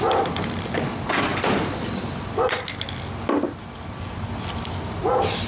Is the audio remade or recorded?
recorded